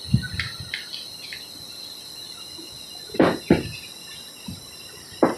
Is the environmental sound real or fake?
real